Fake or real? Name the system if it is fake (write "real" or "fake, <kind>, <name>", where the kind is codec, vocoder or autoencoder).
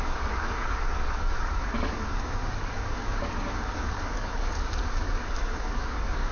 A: fake, codec, DAC